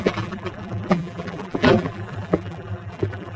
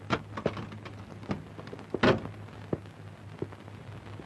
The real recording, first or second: second